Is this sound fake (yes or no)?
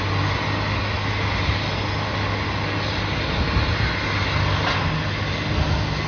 no